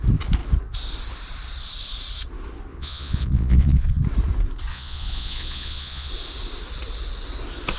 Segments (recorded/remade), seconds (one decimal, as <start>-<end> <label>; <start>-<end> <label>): 0.0-2.7 recorded; 2.7-4.0 remade; 4.0-4.7 recorded; 4.7-6.1 remade; 6.1-7.8 recorded